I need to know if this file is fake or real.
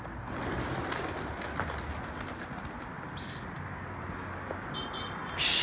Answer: real